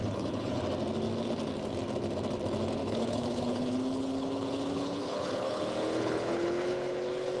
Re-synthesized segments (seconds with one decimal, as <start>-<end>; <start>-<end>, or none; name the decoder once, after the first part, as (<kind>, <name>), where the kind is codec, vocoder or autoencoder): 0.0-0.6 (codec, HILCodec); 2.8-7.4